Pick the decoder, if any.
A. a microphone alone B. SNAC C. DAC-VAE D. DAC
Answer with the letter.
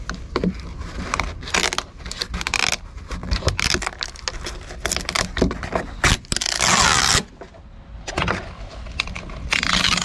A